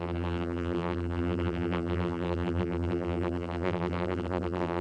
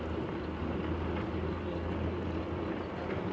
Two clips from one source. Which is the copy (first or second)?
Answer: first